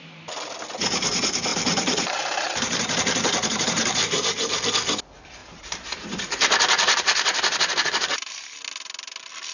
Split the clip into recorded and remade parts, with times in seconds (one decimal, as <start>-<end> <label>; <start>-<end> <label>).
0.0-1.5 recorded; 1.5-4.7 remade; 4.7-5.4 recorded; 5.4-8.6 remade; 8.6-9.5 recorded